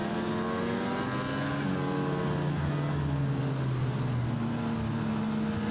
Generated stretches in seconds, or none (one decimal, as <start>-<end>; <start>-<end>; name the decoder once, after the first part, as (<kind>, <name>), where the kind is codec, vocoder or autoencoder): none